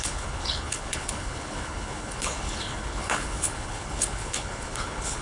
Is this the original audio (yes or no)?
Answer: no